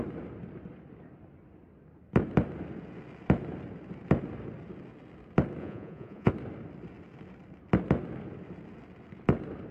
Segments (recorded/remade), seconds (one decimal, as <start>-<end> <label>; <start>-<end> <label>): 0.0-5.6 recorded; 5.6-6.3 remade; 6.3-9.7 recorded